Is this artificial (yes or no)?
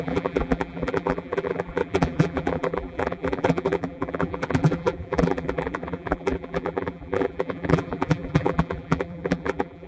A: yes